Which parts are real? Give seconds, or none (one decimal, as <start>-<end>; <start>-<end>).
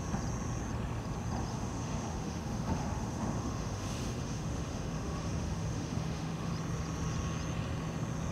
0.0-1.5; 6.5-8.3